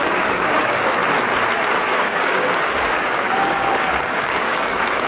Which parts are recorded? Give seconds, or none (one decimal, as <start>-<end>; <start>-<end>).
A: 1.0-1.9